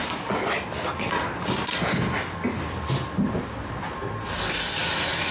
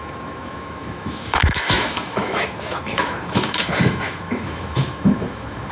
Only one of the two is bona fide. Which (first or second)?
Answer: first